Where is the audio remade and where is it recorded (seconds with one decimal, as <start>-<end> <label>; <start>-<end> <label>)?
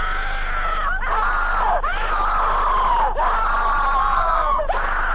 0.0-4.0 recorded; 4.0-4.6 remade; 4.6-5.1 recorded